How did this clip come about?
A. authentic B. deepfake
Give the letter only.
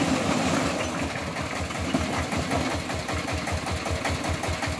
A